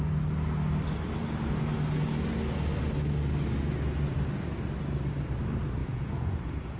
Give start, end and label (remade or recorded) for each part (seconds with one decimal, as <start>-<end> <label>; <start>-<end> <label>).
0.0-5.8 recorded; 5.8-6.8 remade